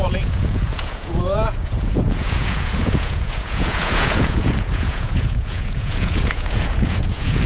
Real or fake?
fake